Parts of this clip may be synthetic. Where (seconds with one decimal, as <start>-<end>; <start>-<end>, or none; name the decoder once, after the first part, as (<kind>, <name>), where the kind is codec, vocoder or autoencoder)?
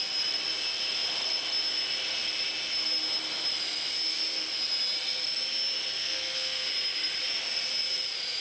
6.0-6.7 (codec, SNAC)